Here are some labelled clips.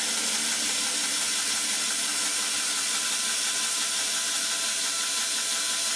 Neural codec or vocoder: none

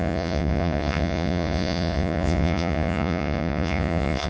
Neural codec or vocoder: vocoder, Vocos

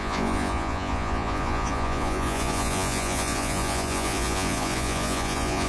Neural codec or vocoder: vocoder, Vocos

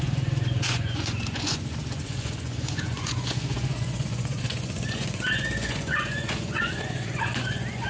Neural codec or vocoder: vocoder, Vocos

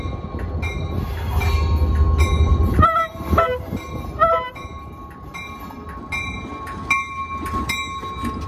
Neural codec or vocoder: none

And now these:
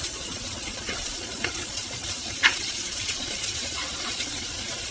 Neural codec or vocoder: vocoder, Vocos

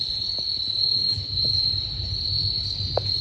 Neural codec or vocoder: none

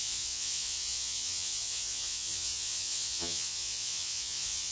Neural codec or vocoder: vocoder, Vocos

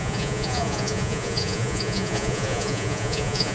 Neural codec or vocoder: vocoder, Vocos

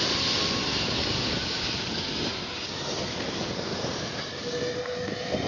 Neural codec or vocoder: none